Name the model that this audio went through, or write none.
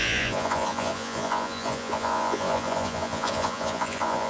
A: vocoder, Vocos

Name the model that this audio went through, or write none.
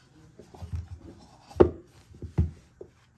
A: none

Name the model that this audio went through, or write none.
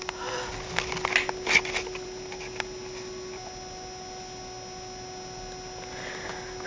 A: none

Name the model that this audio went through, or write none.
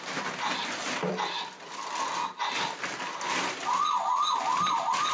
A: none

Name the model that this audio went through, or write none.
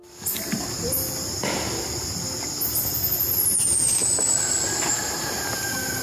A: none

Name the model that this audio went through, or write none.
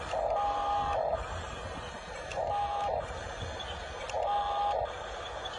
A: none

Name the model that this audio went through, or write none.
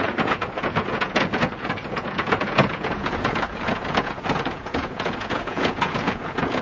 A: vocoder, Vocos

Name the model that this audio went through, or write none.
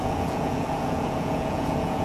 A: vocoder, Vocos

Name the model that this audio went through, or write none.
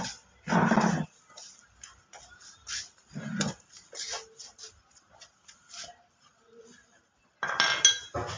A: none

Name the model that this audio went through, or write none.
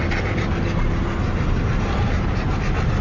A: none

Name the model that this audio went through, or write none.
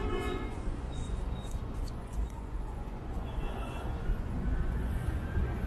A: vocoder, Vocos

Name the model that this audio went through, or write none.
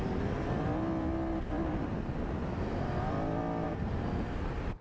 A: none